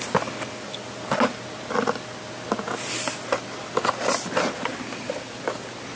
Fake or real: real